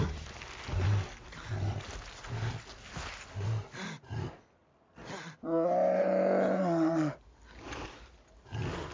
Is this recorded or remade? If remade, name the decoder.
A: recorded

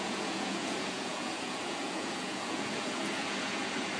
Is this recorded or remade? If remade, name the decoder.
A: remade, vocoder, Vocos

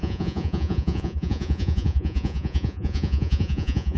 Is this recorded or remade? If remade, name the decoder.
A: remade, vocoder, Vocos